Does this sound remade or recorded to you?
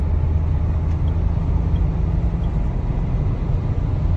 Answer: recorded